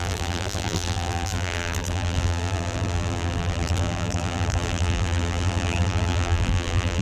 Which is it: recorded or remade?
remade